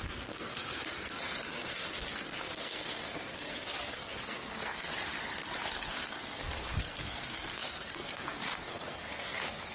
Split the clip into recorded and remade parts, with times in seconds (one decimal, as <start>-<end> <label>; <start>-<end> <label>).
0.0-4.9 remade; 4.9-5.7 recorded; 5.7-9.7 remade